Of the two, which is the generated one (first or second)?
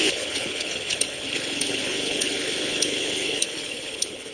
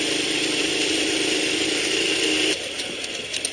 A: first